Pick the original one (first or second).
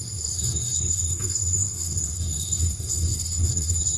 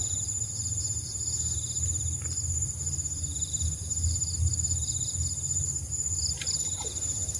second